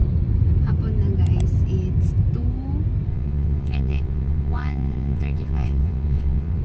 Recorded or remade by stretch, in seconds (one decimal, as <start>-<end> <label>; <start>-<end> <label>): 0.0-3.1 recorded; 3.1-6.6 remade